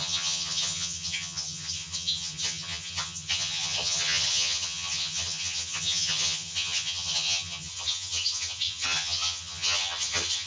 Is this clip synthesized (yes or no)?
yes